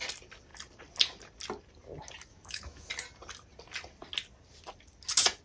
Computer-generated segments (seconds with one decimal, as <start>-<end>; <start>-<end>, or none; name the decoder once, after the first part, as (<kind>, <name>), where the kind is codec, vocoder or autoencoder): 2.3-2.9 (autoencoder, DAC-VAE)